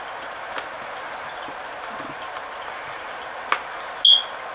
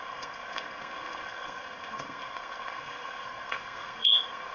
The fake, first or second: second